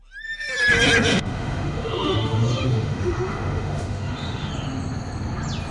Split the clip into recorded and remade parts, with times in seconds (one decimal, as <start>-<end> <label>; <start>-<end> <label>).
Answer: 0.0-1.1 recorded; 1.1-4.5 remade; 4.5-5.7 recorded